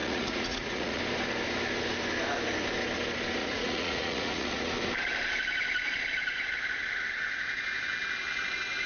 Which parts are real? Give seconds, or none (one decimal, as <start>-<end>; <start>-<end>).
1.0-3.4; 4.7-8.9